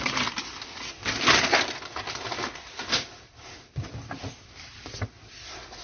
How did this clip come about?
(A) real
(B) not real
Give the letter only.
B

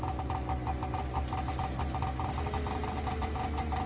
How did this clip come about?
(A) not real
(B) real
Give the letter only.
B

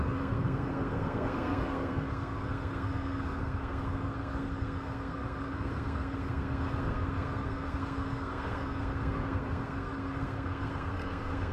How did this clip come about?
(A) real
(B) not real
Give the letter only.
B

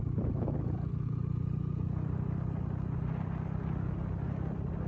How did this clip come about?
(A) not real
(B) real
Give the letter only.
B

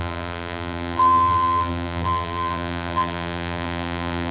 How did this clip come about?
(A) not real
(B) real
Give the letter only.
A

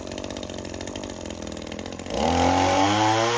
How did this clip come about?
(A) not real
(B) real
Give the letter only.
B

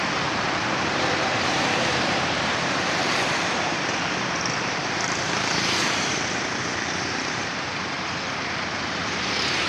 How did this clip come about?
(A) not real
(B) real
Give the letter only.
A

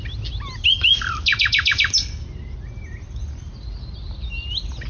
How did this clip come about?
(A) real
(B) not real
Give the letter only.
A